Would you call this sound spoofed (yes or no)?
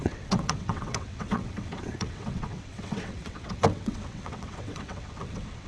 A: yes